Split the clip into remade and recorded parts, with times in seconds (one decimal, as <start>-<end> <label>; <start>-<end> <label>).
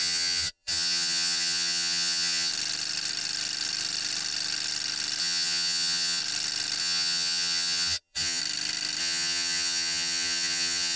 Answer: 0.0-2.5 remade; 2.5-5.2 recorded; 5.2-6.2 remade; 6.2-6.8 recorded; 6.8-8.4 remade; 8.4-9.0 recorded; 9.0-11.0 remade